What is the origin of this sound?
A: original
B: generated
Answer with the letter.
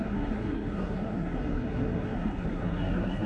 B